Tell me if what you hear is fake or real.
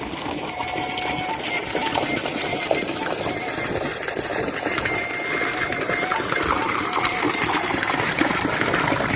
real